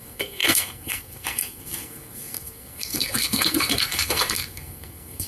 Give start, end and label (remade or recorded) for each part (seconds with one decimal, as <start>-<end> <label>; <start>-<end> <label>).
0.0-5.3 remade